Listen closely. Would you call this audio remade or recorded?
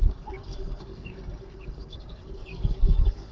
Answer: remade